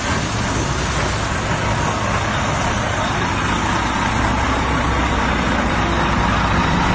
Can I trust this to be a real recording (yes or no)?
yes